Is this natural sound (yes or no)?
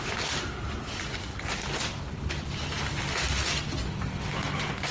yes